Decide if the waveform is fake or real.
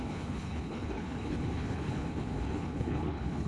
fake